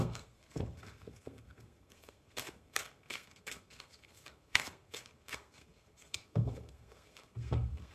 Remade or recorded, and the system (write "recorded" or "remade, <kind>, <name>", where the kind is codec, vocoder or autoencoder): remade, codec, SNAC